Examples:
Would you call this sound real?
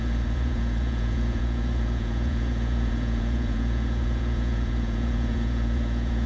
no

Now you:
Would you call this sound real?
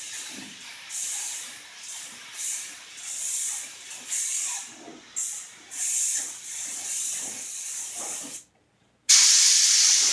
yes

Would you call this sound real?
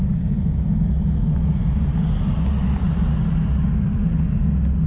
yes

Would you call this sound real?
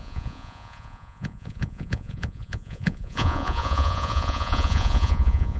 no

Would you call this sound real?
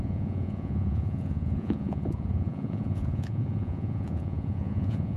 no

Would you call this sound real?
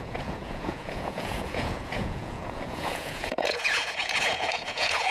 no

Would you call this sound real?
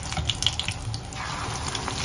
yes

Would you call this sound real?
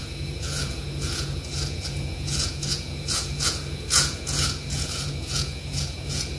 no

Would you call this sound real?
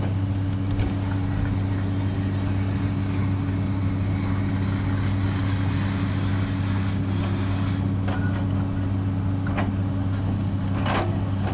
yes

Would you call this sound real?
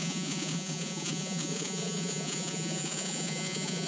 no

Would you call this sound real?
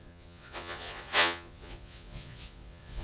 no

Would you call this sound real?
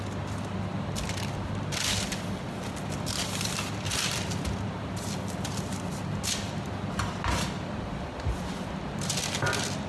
yes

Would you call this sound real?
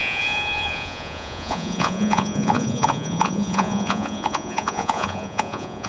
no